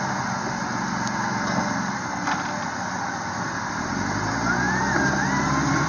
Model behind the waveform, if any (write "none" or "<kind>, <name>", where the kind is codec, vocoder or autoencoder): none